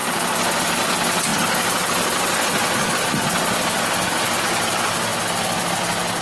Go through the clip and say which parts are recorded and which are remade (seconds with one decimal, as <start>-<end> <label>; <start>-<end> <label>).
0.0-6.2 recorded